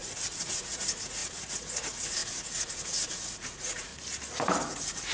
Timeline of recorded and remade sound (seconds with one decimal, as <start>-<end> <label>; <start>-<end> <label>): 0.0-3.9 remade; 3.9-4.6 recorded; 4.6-5.1 remade